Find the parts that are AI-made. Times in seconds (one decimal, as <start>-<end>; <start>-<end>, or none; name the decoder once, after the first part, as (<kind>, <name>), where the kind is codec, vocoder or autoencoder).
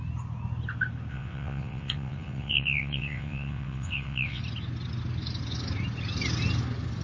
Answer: 1.1-4.4 (vocoder, WaveNeXt)